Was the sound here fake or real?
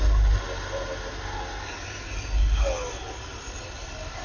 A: real